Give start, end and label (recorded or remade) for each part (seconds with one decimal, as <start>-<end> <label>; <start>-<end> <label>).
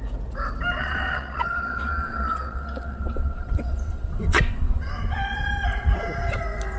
0.0-0.8 recorded; 0.8-4.9 remade; 4.9-6.8 recorded